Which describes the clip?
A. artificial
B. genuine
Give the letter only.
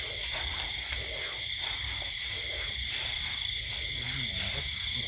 B